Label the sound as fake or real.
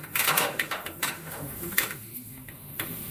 fake